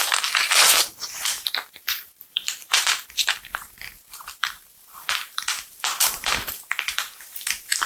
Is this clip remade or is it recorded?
remade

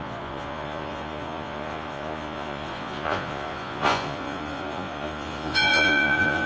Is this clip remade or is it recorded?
remade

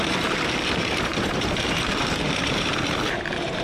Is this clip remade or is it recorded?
remade